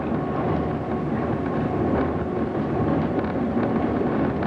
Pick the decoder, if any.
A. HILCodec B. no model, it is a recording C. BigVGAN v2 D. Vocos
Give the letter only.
B